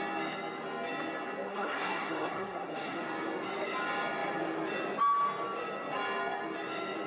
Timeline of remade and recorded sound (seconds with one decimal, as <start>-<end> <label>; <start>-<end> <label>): 0.0-1.5 recorded; 1.5-3.0 remade; 3.0-7.1 recorded